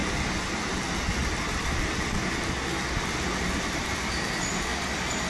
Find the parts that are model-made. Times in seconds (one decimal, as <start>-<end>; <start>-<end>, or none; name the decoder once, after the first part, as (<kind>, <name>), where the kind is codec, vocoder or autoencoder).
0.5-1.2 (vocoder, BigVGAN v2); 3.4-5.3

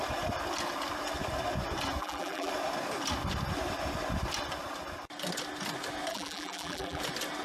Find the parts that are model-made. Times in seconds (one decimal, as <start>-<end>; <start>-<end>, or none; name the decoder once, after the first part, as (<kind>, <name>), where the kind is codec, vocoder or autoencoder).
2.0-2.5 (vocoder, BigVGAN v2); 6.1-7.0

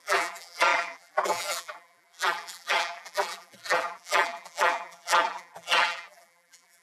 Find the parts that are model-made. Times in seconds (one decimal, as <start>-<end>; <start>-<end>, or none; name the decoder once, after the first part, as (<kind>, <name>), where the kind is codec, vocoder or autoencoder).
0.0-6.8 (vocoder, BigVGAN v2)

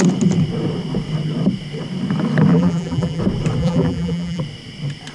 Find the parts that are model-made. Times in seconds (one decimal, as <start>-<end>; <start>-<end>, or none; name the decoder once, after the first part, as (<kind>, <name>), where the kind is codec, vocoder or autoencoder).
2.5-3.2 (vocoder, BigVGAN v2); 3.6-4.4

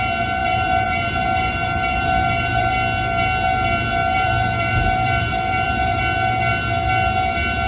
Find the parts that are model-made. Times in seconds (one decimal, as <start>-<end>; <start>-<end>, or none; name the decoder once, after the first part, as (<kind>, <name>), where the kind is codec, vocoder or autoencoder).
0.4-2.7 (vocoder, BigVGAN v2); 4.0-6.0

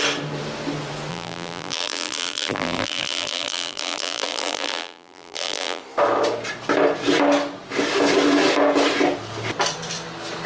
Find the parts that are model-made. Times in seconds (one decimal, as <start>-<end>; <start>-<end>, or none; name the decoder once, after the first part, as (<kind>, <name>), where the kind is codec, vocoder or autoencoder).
1.1-5.8 (vocoder, BigVGAN v2)